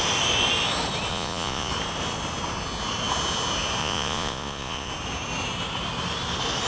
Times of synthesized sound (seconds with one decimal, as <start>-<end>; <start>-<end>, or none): 1.1-1.7; 3.8-4.9